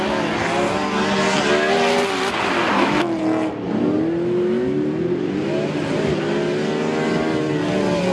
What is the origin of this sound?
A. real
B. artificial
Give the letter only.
A